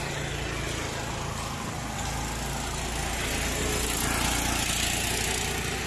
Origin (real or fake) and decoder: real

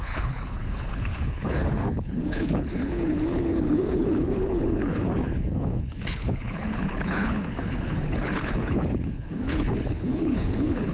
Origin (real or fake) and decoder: fake, codec, HILCodec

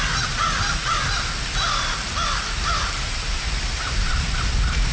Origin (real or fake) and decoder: real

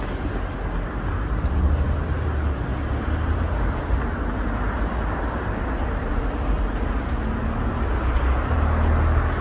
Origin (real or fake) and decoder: real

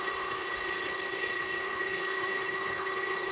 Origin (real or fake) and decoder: fake, codec, HILCodec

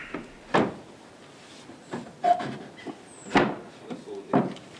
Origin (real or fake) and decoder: real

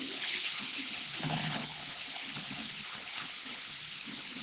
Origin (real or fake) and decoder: fake, codec, HILCodec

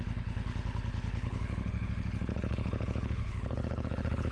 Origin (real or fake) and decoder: fake, codec, HILCodec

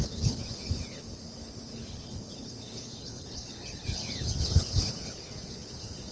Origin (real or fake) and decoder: fake, codec, HILCodec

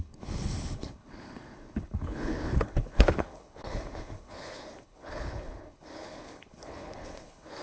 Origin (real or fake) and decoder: fake, codec, HILCodec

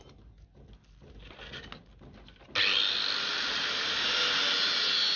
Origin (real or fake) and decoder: real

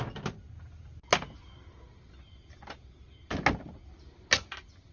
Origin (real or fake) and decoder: real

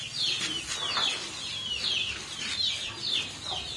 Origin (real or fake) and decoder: real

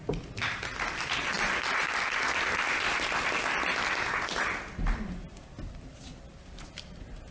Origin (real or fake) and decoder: real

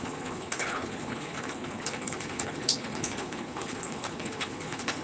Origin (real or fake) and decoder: fake, codec, HILCodec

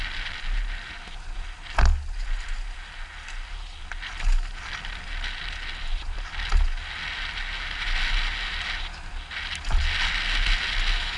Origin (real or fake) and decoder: real